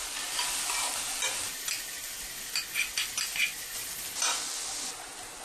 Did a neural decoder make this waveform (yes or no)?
no